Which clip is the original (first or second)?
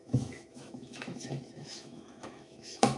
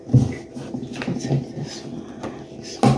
second